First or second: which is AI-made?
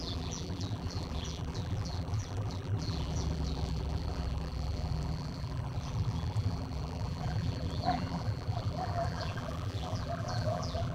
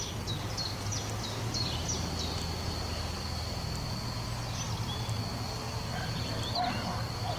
first